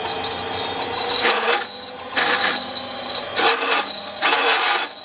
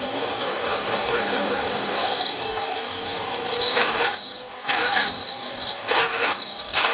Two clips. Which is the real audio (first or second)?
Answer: first